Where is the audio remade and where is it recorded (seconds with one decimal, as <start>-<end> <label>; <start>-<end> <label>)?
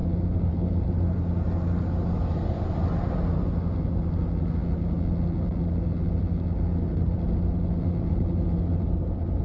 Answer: 0.0-9.4 recorded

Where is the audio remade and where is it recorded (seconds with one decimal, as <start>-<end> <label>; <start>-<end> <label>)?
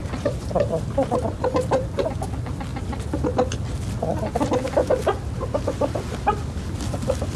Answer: 0.0-7.4 recorded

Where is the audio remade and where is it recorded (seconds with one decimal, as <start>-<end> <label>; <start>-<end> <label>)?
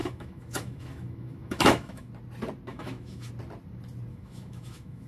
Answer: 0.0-2.1 remade; 2.1-2.7 recorded; 2.7-3.3 remade; 3.3-4.1 recorded; 4.1-5.1 remade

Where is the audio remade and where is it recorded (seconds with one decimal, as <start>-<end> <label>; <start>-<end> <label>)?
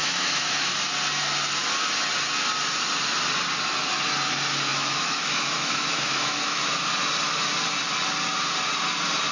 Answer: 0.0-0.7 remade; 0.7-4.7 recorded; 4.7-6.6 remade; 6.6-9.3 recorded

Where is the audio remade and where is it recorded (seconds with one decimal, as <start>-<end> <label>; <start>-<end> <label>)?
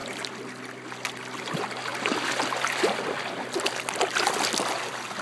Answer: 0.0-5.2 recorded